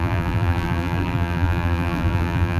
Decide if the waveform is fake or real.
fake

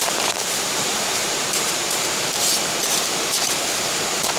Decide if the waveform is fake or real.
fake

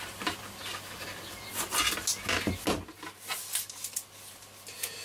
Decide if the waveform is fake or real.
real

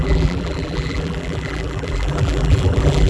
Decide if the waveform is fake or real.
fake